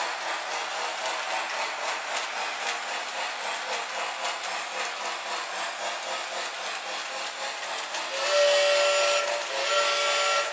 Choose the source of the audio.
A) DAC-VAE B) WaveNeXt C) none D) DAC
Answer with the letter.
C